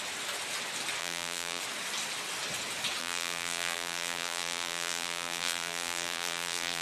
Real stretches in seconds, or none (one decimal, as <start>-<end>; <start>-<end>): 0.0-1.0; 1.6-3.0